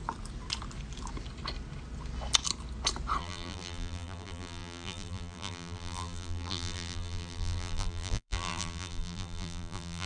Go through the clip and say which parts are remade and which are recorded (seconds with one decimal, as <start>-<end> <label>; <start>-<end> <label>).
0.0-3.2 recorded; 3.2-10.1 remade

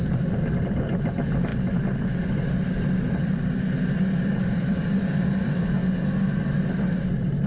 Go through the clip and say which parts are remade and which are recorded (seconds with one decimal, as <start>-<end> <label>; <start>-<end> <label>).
0.0-1.5 remade; 1.5-3.1 recorded; 3.1-5.8 remade; 5.8-6.4 recorded; 6.4-7.5 remade

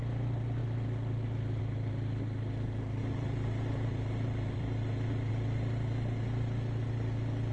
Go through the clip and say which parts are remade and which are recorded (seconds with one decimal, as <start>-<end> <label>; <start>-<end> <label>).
0.0-3.0 recorded; 3.0-5.3 remade; 5.3-7.5 recorded

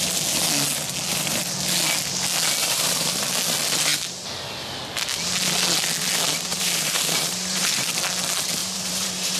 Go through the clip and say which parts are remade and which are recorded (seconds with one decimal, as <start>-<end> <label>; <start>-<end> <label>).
0.0-2.6 recorded; 2.6-3.2 remade; 3.2-6.5 recorded; 6.5-7.9 remade; 7.9-8.6 recorded; 8.6-9.4 remade

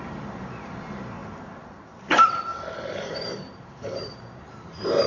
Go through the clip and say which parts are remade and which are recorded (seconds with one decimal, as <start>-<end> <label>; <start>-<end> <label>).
0.0-5.1 remade